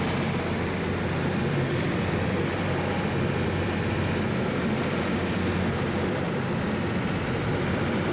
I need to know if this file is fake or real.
fake